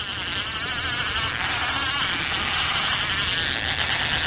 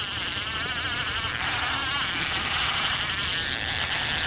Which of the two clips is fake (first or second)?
second